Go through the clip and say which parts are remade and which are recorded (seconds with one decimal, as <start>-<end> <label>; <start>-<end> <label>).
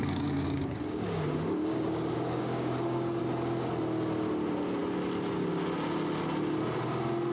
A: 0.0-3.2 remade; 3.2-7.3 recorded